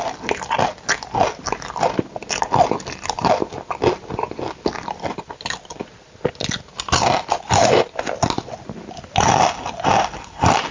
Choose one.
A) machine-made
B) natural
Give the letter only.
B